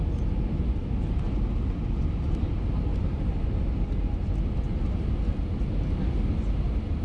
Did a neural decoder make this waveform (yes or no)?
no